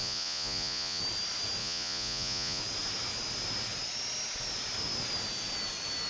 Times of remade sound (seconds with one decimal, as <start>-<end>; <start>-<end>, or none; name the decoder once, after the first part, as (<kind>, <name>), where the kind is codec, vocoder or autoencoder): 0.0-1.0 (vocoder, Vocos); 1.6-2.6